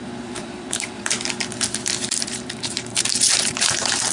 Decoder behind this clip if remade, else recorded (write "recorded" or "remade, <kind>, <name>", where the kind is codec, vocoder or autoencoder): remade, vocoder, BigVGAN v2